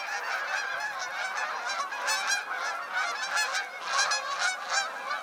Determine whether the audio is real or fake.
real